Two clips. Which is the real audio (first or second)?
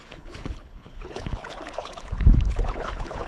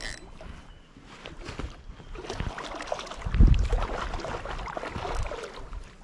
second